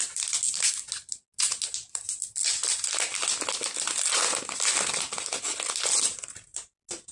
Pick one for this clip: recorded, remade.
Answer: recorded